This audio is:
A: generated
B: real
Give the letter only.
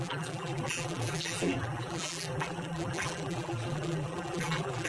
A